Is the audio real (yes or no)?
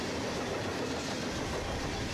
yes